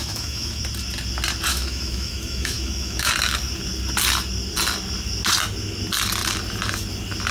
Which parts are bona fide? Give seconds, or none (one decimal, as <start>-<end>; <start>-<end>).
0.6-1.5; 3.1-7.3